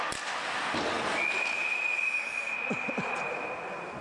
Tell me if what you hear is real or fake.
real